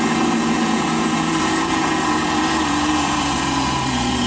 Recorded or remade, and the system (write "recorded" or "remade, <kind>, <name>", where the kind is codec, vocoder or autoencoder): remade, vocoder, Vocos